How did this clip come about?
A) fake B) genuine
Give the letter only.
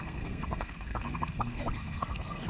A